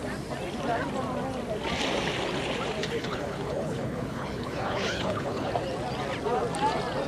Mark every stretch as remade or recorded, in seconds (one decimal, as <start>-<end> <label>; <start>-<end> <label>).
0.0-2.8 recorded; 2.8-5.5 remade; 5.5-7.1 recorded